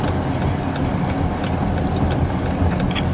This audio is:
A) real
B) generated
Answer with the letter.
A